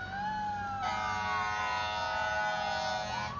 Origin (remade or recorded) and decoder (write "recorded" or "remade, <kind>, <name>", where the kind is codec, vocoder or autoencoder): recorded